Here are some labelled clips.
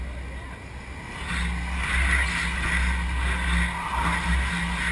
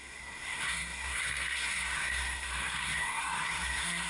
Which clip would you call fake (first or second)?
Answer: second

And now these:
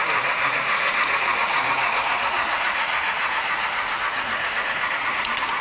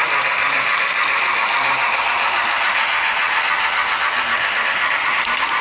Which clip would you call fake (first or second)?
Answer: first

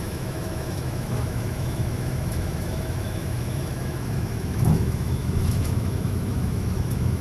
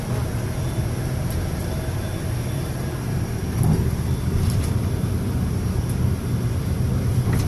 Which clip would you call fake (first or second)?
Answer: first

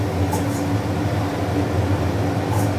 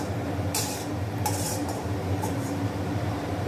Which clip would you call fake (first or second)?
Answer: second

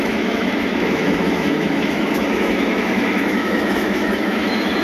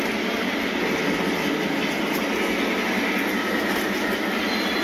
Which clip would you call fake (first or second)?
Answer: first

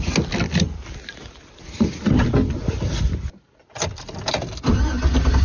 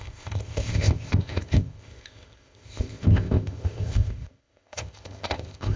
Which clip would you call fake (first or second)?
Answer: second